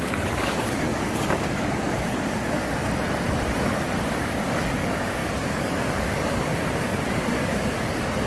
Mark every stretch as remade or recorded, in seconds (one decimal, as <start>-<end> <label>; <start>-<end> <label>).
0.0-2.8 remade; 2.8-4.1 recorded; 4.1-8.3 remade

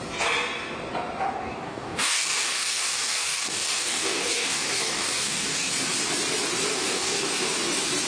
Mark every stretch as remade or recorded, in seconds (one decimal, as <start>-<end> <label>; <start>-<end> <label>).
0.0-1.3 recorded; 1.3-5.7 remade; 5.7-6.7 recorded; 6.7-7.3 remade; 7.3-8.1 recorded

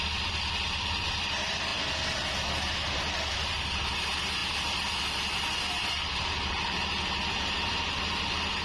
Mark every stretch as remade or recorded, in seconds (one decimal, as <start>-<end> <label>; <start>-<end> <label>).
0.0-8.6 recorded

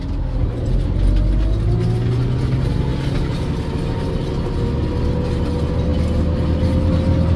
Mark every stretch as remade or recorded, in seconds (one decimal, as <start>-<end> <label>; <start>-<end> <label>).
0.0-7.4 recorded

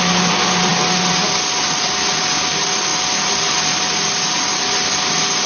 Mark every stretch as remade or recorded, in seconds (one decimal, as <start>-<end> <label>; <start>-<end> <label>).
0.0-5.5 recorded

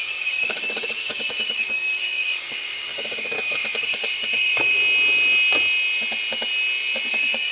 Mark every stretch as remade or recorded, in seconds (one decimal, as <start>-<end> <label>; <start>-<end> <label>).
0.0-4.8 remade; 4.8-7.1 recorded; 7.1-7.5 remade